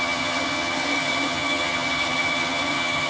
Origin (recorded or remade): remade